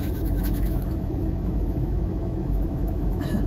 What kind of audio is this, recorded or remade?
remade